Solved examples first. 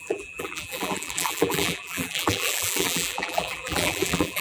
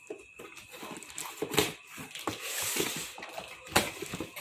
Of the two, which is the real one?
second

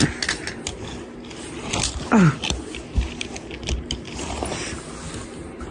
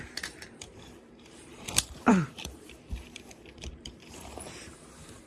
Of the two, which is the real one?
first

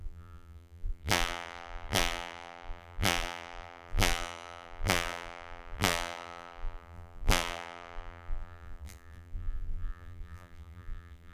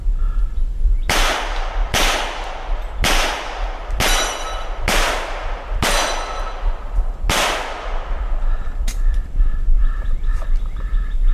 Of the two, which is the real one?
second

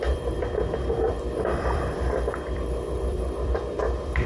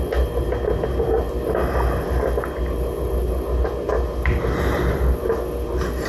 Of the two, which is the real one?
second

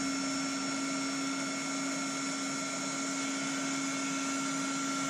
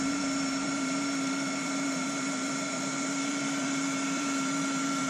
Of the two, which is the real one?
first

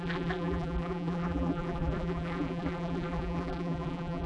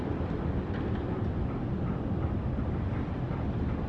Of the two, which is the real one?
second